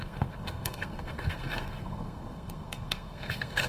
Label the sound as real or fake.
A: fake